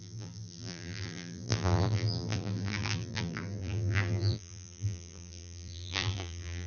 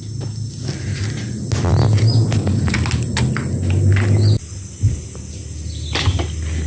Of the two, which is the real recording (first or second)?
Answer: second